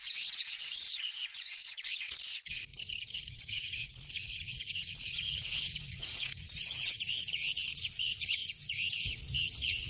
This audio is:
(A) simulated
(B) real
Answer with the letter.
A